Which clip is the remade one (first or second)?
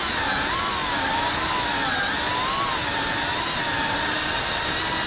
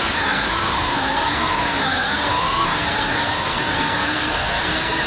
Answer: second